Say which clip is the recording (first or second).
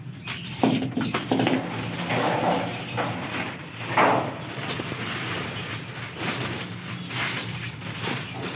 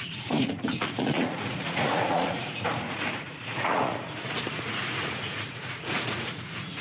first